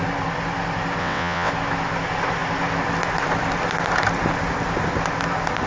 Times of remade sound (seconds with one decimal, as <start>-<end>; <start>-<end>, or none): 1.0-1.5